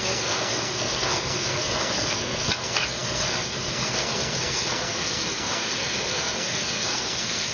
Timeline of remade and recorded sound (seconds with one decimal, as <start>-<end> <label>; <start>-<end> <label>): 0.0-7.5 remade